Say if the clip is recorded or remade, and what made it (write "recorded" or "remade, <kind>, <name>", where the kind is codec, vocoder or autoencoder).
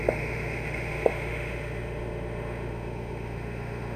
remade, autoencoder, DAC-VAE